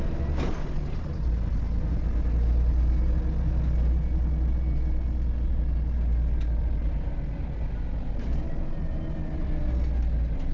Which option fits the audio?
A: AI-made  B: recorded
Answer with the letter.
B